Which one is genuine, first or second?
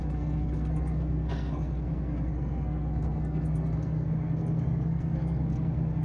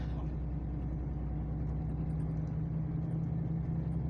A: second